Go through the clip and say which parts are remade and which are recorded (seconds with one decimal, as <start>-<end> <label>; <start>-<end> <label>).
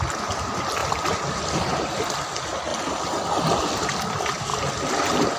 0.0-2.7 recorded; 2.7-3.6 remade; 3.6-5.4 recorded